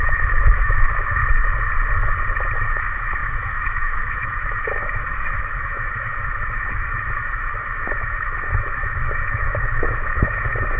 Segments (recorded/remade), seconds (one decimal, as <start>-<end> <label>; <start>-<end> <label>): 0.0-1.2 remade; 1.2-2.6 recorded; 2.6-10.8 remade